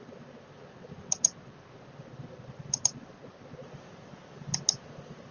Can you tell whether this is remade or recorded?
recorded